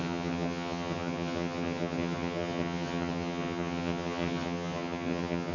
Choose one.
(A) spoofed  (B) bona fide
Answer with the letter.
A